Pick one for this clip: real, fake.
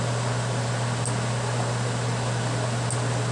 real